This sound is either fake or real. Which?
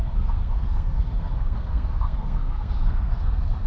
fake